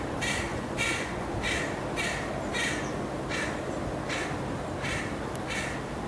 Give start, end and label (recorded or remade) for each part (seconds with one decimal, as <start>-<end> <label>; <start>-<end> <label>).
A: 0.0-0.5 recorded; 0.5-1.3 remade; 1.3-6.1 recorded